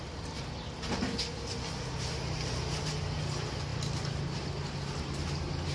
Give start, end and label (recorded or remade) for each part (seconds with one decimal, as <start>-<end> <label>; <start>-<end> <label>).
0.0-5.7 recorded